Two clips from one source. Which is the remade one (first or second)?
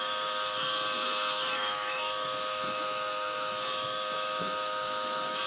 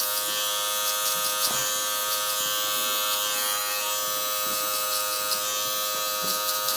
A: first